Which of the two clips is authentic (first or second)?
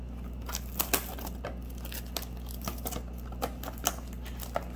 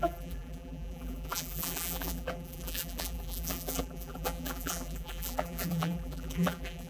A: first